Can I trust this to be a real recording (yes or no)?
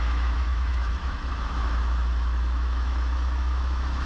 no